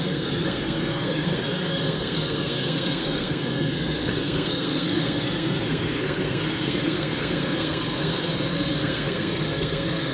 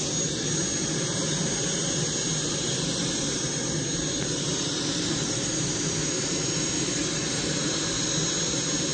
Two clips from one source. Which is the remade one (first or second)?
first